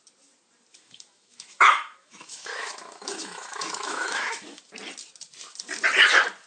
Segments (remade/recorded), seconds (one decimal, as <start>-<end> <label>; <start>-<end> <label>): 0.0-0.7 recorded; 0.7-4.6 remade; 4.6-6.5 recorded